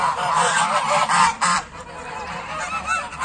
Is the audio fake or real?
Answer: fake